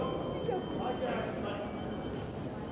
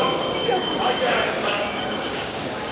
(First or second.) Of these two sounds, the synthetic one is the second